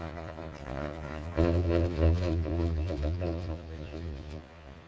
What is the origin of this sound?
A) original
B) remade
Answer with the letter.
B